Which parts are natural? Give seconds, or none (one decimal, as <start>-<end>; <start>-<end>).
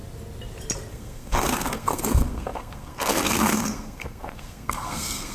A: 0.0-0.9